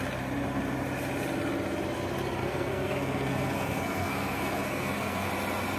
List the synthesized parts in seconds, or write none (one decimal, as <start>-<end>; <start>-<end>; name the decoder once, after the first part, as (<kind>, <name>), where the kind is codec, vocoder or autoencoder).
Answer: 2.4-5.3 (codec, SNAC)